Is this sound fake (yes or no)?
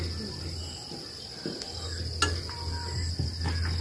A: no